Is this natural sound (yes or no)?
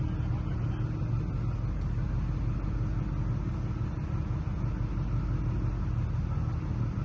yes